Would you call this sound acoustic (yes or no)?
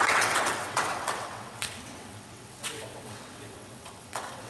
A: no